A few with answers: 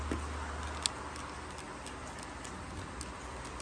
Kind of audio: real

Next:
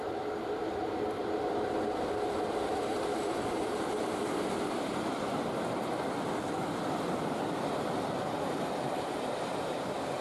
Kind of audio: fake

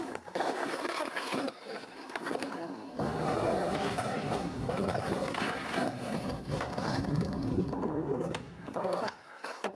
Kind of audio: fake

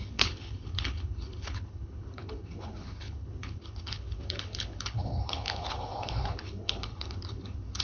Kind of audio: fake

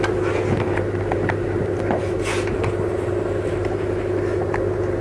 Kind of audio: real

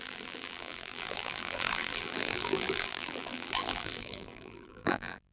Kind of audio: fake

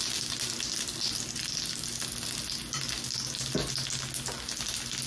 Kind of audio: real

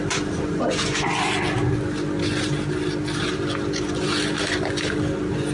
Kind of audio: real